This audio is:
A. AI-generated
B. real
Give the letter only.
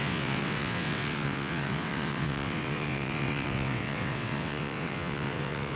A